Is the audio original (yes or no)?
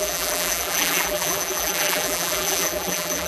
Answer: no